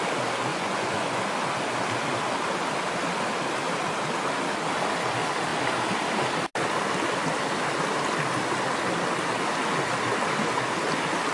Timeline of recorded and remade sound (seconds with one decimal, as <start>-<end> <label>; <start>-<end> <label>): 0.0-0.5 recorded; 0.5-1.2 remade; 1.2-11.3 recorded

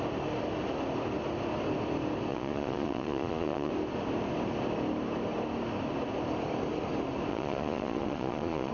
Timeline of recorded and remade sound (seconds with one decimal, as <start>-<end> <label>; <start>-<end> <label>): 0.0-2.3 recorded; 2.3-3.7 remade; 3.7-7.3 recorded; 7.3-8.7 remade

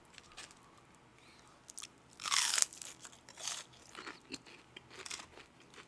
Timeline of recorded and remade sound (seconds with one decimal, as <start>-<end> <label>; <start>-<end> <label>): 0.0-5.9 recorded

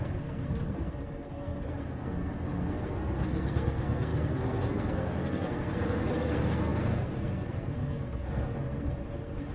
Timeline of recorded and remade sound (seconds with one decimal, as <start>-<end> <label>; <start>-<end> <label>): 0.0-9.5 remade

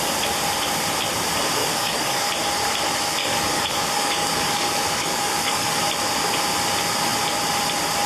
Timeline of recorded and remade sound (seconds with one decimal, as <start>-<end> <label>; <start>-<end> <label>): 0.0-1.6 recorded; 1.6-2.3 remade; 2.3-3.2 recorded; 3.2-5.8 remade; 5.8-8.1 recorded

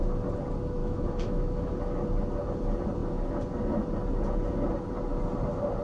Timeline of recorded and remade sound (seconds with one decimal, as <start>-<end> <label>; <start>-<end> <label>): 0.0-0.8 recorded; 0.8-1.7 remade; 1.7-5.8 recorded